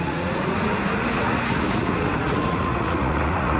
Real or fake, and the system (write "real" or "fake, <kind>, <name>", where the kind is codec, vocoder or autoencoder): fake, vocoder, Vocos